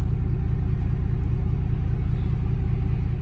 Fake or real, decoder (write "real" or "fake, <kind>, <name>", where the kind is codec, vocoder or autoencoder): real